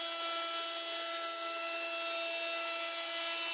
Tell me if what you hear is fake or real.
real